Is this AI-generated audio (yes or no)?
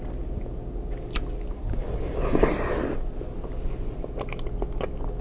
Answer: no